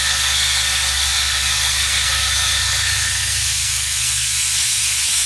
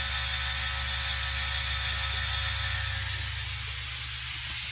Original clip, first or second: second